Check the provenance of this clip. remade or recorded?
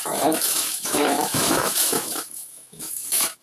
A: remade